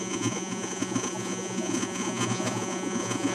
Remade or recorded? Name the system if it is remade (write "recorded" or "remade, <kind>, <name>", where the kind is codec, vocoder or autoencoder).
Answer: remade, vocoder, Vocos